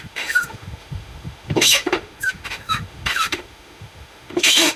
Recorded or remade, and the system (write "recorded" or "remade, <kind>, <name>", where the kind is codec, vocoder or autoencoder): remade, autoencoder, DAC-VAE